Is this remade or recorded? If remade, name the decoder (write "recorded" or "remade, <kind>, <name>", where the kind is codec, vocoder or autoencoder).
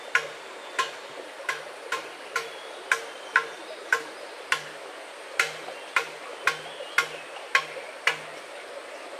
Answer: recorded